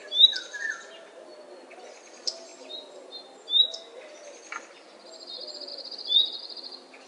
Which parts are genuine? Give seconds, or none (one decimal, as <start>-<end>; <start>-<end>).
0.0-7.1